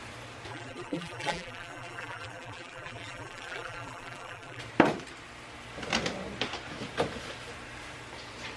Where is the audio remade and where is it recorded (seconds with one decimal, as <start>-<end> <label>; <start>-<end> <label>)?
0.0-0.5 recorded; 0.5-4.6 remade; 4.6-8.6 recorded

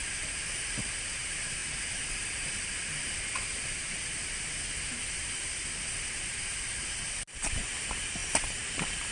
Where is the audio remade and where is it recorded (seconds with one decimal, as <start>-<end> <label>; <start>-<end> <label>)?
0.0-9.1 recorded